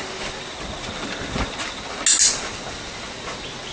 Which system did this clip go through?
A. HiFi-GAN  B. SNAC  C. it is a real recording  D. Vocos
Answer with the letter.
C